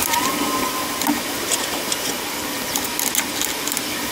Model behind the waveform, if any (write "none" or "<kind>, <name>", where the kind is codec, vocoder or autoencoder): none